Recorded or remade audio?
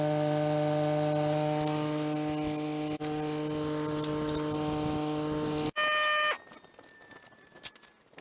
recorded